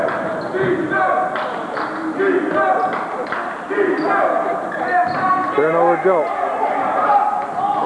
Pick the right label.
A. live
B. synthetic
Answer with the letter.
A